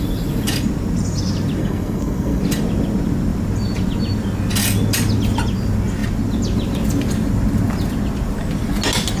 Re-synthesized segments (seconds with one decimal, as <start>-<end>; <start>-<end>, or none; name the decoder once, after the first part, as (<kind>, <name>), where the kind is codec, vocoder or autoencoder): 1.6-2.4 (codec, SNAC)